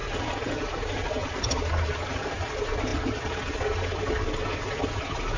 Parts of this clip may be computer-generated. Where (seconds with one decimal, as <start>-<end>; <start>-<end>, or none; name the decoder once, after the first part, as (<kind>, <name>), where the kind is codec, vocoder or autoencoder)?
1.2-2.3 (vocoder, BigVGAN v2)